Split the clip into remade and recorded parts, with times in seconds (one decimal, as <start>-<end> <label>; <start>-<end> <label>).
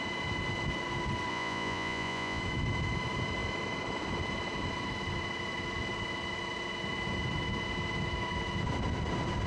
0.0-1.3 recorded; 1.3-2.4 remade; 2.4-9.5 recorded